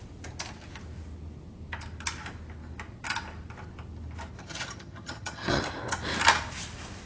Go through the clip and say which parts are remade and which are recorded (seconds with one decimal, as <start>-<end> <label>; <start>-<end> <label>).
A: 0.0-4.4 recorded; 4.4-5.6 remade; 5.6-7.1 recorded